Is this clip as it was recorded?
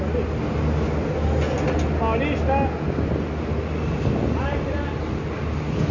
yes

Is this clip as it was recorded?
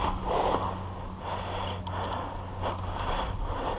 yes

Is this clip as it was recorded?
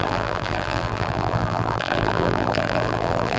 no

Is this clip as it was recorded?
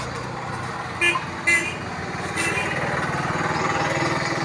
yes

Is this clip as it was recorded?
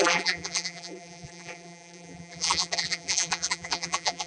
no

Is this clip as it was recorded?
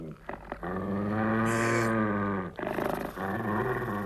yes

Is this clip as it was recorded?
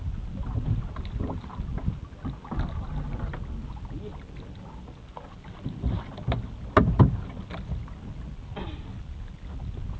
yes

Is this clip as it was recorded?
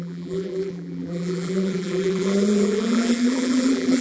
no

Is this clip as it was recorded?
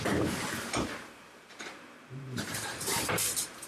no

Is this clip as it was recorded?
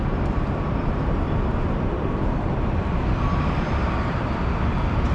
no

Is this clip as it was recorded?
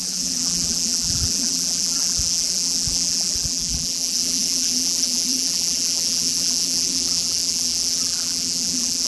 no